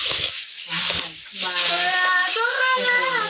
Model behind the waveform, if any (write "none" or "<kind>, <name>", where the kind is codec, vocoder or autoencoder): codec, DAC